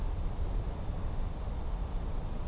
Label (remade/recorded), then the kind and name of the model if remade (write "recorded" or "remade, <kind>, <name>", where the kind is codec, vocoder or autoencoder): recorded